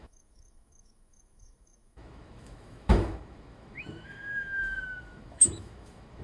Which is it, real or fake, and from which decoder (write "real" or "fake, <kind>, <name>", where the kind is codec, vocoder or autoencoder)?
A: fake, autoencoder, DAC-VAE